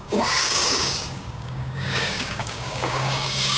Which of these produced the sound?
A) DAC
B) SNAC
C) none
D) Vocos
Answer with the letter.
A